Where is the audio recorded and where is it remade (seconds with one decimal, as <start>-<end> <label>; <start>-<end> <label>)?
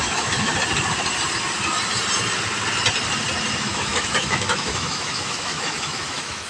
0.0-0.5 remade; 0.5-3.6 recorded; 3.6-6.5 remade